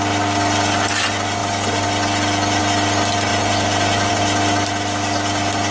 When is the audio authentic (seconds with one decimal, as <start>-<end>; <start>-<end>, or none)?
0.0-5.7